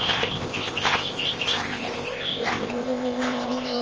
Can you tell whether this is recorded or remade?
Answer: remade